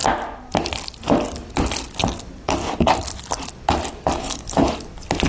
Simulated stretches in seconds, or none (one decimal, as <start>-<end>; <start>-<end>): 4.2-4.7